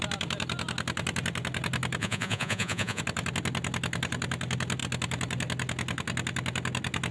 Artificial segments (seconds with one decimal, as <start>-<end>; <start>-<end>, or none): 2.0-3.0